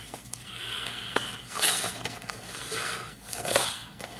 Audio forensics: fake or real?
fake